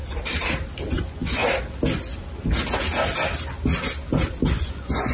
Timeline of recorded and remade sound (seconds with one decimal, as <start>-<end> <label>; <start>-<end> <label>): 0.0-0.9 recorded; 0.9-1.4 remade; 1.4-4.5 recorded; 4.5-5.1 remade